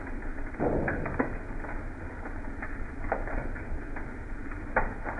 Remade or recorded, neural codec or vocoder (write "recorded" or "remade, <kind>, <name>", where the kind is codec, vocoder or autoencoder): recorded